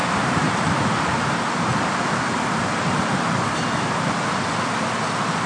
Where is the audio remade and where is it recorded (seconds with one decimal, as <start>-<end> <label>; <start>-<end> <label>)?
0.0-0.5 remade; 0.5-5.5 recorded